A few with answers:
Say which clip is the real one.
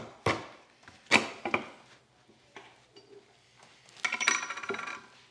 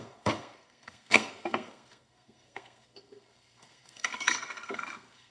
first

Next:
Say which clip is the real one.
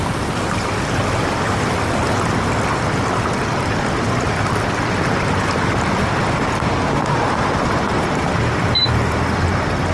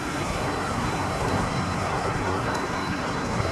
first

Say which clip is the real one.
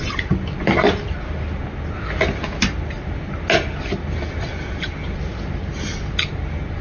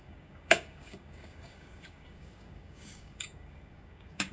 first